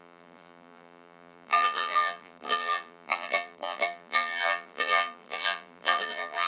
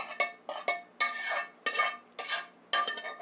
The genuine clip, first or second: second